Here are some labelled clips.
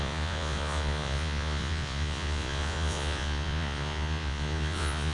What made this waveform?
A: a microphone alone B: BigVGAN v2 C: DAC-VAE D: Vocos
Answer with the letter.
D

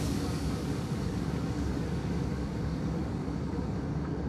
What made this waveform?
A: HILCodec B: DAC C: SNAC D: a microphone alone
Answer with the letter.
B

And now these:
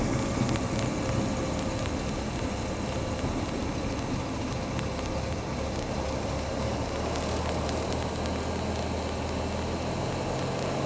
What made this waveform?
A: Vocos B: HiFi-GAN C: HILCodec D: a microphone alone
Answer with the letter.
D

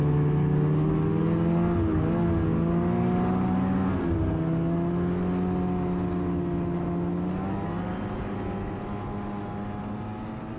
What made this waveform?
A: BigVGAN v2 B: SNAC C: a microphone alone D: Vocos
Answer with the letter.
C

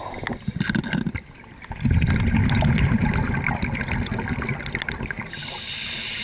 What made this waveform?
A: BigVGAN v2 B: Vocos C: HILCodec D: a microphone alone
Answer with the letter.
D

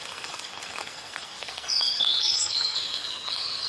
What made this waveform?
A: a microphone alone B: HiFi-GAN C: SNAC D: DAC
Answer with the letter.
C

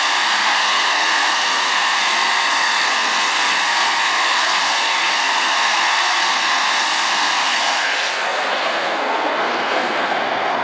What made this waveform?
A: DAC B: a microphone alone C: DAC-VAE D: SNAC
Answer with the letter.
D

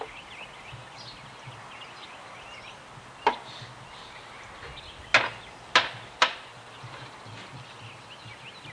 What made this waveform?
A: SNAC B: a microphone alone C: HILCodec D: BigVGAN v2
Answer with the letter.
B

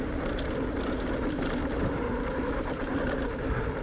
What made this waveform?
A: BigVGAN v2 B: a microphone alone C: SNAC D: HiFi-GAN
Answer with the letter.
B